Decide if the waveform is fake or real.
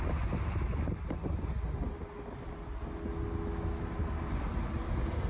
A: real